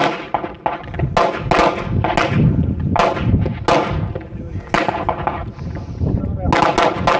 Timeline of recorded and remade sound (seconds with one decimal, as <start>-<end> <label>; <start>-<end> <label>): 0.0-7.2 recorded